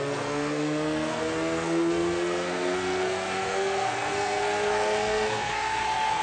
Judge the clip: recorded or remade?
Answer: remade